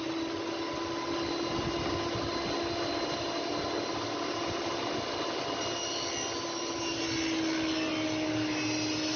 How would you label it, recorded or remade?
recorded